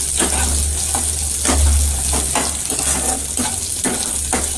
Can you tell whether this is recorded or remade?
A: recorded